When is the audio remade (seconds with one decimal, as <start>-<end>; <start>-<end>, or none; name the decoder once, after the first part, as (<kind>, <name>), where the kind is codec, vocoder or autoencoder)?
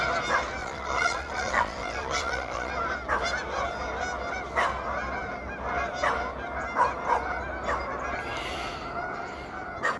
0.6-2.7 (vocoder, Vocos)